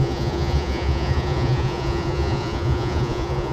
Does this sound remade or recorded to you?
remade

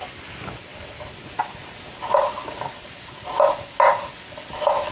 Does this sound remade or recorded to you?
recorded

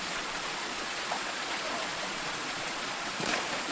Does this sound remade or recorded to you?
remade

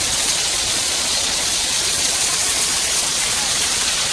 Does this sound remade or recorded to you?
remade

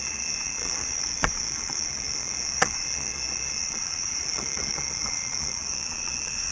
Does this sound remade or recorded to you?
remade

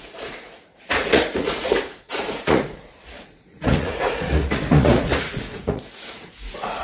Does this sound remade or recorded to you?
remade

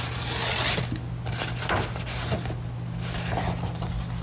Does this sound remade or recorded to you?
recorded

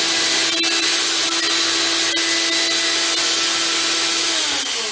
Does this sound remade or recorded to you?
recorded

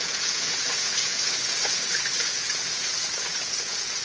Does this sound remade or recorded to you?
remade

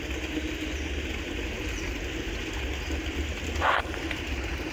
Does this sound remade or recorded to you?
recorded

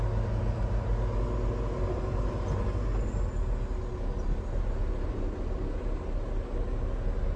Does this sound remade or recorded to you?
recorded